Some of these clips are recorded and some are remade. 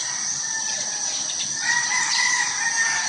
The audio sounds remade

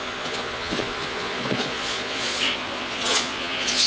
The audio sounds remade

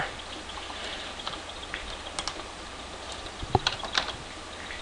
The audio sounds recorded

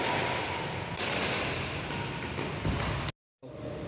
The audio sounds recorded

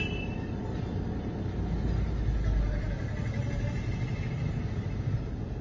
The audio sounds recorded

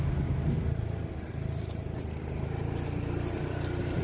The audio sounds recorded